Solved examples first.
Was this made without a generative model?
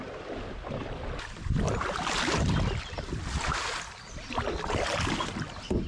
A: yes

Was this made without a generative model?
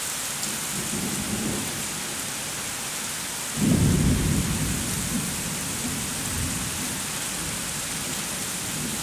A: yes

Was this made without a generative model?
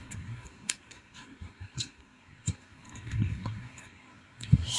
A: no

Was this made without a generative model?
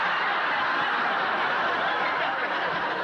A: yes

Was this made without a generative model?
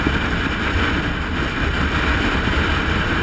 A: yes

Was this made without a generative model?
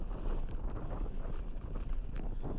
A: yes